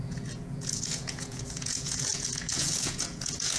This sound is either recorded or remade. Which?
remade